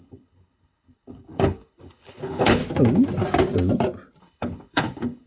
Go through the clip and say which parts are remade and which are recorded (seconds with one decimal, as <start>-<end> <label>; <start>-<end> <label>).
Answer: 0.0-2.6 remade; 2.6-4.2 recorded; 4.2-5.3 remade